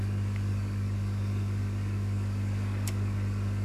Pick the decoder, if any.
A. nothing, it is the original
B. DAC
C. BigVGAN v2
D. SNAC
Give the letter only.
B